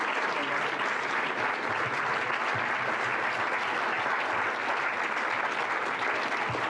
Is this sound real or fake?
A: real